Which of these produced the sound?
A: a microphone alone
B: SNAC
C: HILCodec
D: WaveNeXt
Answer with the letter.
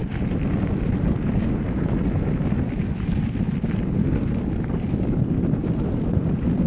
A